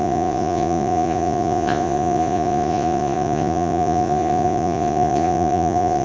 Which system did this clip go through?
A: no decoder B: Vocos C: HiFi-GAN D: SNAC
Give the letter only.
B